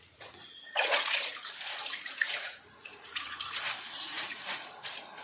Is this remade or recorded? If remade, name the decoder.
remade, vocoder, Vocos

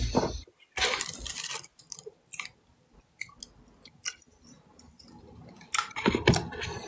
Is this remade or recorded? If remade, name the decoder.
recorded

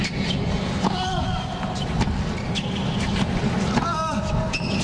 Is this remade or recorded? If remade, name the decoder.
recorded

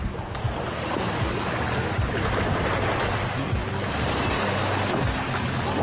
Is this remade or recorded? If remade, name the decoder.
recorded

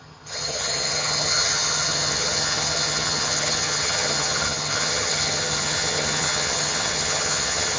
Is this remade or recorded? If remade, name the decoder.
remade, vocoder, HiFi-GAN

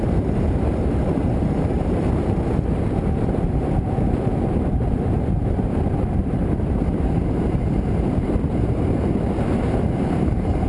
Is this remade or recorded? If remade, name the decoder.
remade, vocoder, BigVGAN v2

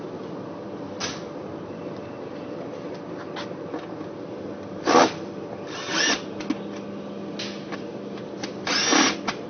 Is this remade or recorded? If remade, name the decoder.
recorded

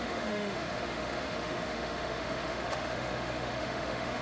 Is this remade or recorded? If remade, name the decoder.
remade, autoencoder, DAC-VAE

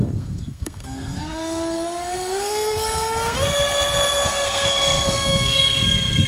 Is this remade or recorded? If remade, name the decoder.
remade, codec, SNAC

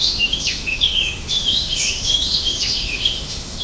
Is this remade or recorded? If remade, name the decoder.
remade, autoencoder, DAC-VAE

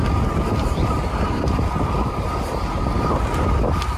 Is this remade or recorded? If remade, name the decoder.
recorded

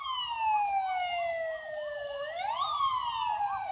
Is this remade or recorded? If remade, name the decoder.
recorded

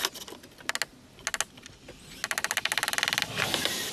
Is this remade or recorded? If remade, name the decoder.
recorded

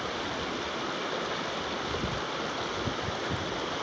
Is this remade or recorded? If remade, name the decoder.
recorded